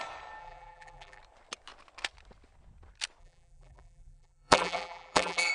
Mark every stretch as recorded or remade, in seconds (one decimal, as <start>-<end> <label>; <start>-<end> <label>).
0.0-0.4 recorded; 0.4-1.2 remade; 1.2-3.2 recorded; 3.2-5.5 remade